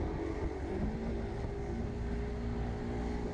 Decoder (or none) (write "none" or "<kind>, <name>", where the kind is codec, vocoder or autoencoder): none